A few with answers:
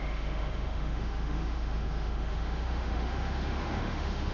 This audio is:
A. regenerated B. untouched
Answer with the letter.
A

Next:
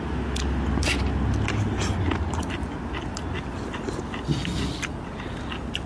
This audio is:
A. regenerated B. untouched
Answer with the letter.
B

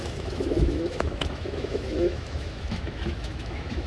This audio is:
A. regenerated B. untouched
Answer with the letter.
A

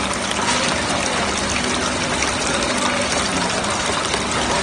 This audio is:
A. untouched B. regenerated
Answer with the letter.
A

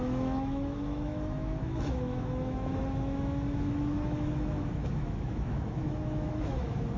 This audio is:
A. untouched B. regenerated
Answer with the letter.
B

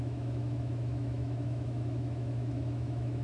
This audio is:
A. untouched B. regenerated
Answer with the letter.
B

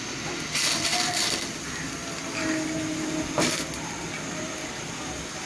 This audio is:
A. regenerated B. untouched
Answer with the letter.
B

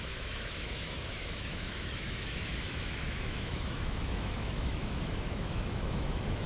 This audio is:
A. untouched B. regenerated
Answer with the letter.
B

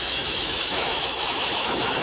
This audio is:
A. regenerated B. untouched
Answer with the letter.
A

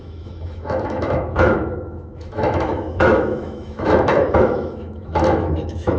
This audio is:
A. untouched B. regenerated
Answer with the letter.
B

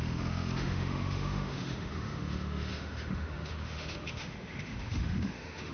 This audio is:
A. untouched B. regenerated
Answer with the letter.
B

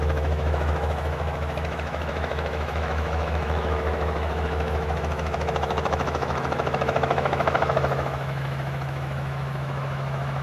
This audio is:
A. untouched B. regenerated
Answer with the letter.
B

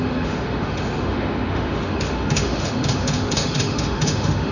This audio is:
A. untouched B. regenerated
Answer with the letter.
B